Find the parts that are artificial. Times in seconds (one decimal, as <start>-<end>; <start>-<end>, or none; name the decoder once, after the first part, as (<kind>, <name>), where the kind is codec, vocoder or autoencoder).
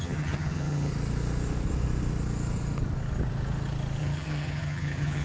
0.0-0.9 (vocoder, HiFi-GAN); 4.0-5.2